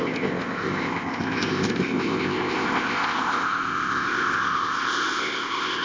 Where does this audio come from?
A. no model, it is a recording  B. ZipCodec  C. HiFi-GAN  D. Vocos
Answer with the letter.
B